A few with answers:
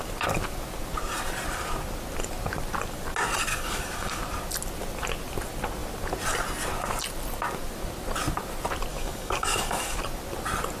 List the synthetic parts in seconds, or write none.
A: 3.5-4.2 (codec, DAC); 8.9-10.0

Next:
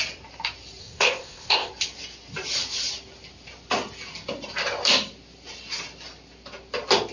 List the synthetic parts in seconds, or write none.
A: 0.8-1.7 (codec, ZipCodec)

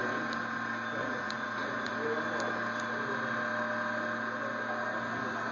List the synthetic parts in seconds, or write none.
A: 1.0-1.9 (vocoder, Vocos)

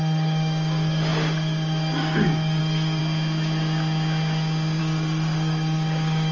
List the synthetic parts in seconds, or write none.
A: 0.0-3.0 (codec, DAC); 4.8-6.3

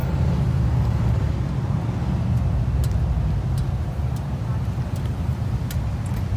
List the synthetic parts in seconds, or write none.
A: 0.0-1.3 (vocoder, BigVGAN v2); 3.6-5.6